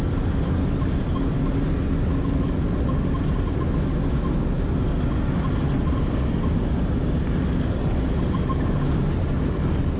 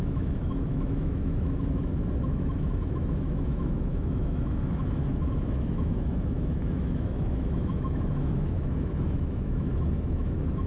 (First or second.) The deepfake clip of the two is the second